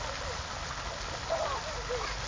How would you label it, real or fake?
real